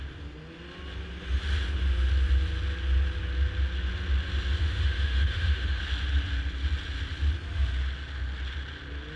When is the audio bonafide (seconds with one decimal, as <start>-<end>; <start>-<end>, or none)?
0.0-4.6; 5.8-9.2